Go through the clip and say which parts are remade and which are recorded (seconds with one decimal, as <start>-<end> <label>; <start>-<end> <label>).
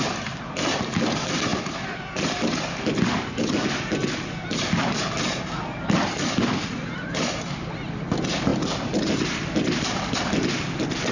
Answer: 0.0-11.1 recorded